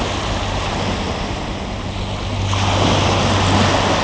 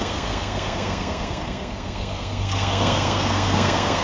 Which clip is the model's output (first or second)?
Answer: second